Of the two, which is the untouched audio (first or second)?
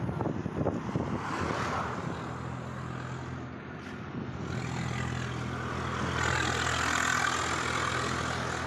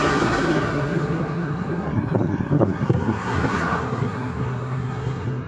first